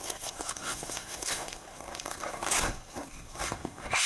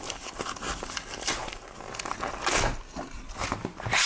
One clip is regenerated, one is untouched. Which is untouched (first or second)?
second